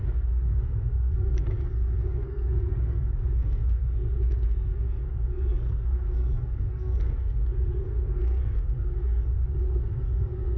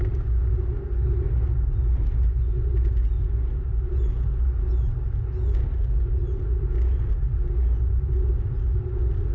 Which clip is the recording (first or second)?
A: second